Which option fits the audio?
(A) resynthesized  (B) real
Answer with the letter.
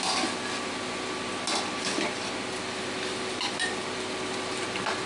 B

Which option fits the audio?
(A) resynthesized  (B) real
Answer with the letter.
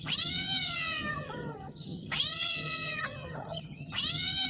A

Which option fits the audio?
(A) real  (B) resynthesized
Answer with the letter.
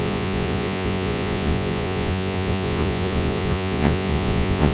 B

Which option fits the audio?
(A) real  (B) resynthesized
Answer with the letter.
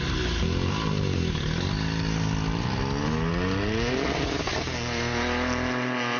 A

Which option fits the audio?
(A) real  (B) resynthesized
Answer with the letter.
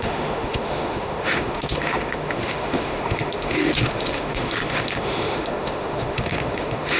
B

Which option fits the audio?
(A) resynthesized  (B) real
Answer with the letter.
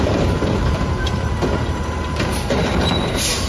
A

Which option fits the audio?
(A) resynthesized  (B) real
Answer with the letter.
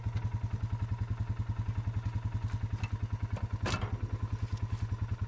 B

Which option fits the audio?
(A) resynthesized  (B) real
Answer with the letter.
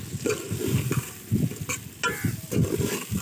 B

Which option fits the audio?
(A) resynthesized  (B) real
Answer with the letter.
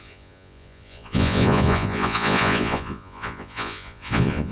A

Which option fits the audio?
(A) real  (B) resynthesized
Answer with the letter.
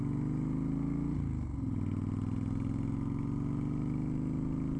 A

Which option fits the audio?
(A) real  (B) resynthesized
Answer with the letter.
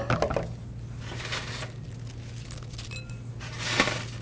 A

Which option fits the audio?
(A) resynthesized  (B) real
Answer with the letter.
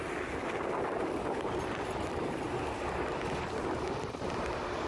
B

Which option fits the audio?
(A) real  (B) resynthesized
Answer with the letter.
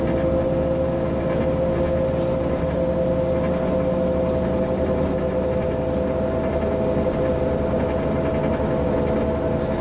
A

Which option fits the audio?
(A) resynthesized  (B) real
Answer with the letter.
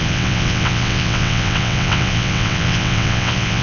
A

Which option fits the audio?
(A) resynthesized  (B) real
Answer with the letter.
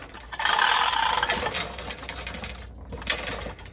B